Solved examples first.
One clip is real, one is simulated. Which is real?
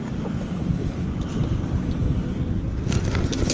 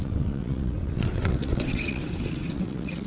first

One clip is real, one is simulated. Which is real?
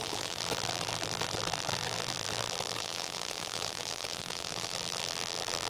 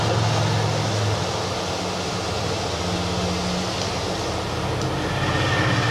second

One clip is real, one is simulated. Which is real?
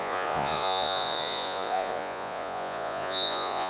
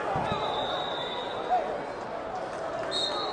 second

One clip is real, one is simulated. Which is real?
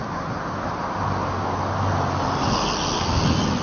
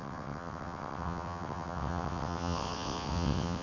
first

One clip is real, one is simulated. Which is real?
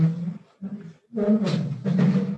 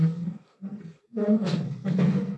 first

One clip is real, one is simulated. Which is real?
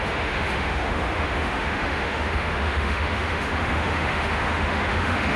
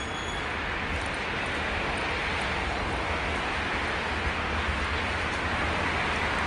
second